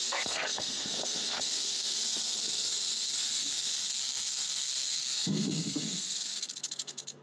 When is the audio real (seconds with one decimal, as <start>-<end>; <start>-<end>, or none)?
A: none